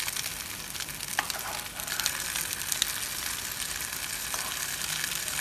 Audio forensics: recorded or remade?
recorded